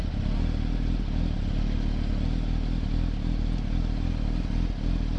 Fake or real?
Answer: real